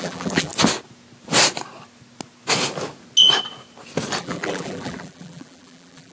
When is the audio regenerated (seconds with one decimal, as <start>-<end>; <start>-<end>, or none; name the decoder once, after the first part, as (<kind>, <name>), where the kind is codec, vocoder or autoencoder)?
0.0-0.5 (vocoder, BigVGAN v2); 4.2-6.1